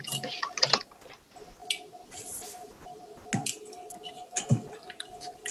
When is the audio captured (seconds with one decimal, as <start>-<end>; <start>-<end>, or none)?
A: 0.0-5.5